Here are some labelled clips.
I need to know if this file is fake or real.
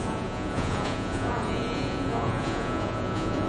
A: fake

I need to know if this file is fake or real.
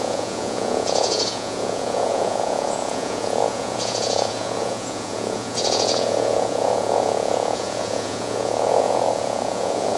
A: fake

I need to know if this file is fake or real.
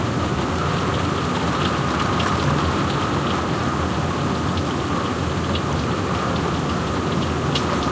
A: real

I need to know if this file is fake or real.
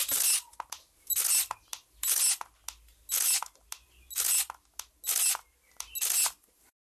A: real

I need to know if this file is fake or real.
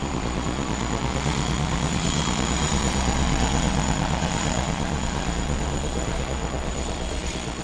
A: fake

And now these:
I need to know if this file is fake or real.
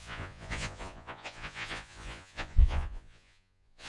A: fake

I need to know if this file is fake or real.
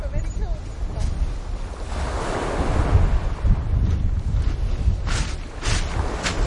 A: real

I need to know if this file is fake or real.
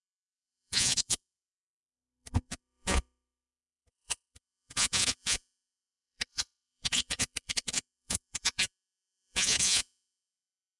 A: fake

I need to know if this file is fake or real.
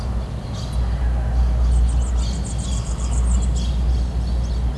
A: real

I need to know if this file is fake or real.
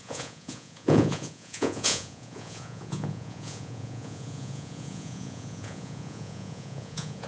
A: fake